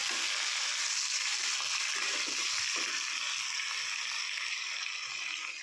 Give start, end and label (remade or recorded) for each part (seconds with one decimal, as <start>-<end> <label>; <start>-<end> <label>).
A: 0.0-5.6 recorded